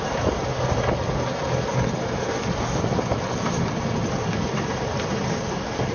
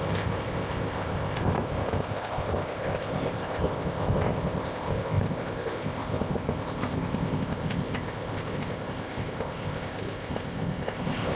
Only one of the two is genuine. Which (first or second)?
first